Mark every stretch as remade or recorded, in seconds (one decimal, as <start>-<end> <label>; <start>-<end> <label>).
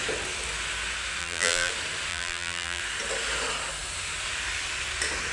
0.0-1.2 recorded; 1.2-1.7 remade; 1.7-2.1 recorded; 2.1-2.8 remade; 2.8-5.3 recorded